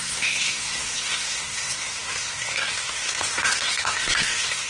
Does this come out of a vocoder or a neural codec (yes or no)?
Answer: yes